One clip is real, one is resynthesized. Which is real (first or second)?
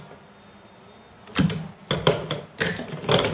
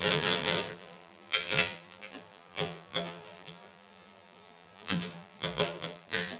first